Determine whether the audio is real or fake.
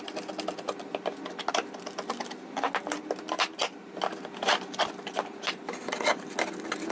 real